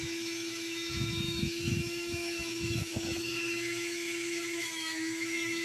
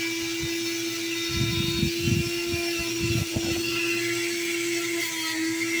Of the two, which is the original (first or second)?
second